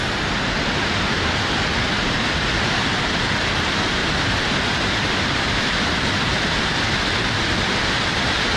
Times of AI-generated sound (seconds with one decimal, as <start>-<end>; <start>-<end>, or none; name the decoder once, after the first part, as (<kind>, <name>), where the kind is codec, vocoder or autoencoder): 4.0-5.7 (vocoder, BigVGAN v2)